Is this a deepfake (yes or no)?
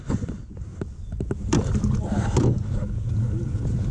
no